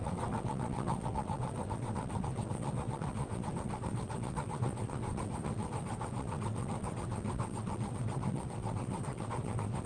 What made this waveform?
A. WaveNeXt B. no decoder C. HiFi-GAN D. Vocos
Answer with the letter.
A